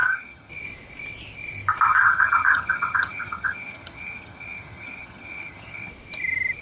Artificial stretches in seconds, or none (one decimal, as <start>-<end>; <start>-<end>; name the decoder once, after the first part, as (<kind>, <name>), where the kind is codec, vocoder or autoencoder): 0.0-0.5 (vocoder, HiFi-GAN); 1.9-5.9